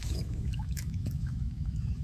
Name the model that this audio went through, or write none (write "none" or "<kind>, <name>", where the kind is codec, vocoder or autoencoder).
autoencoder, DAC-VAE